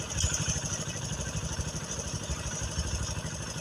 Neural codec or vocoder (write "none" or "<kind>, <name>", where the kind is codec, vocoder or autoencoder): none